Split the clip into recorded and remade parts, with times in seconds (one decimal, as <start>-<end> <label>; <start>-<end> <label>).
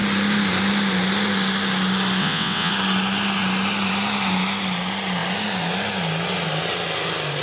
0.0-2.2 recorded; 2.2-2.7 remade; 2.7-7.4 recorded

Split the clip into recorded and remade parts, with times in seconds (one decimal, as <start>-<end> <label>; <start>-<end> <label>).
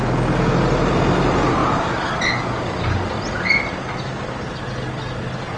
0.0-5.6 recorded